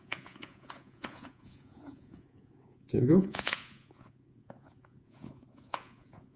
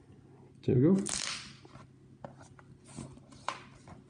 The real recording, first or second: second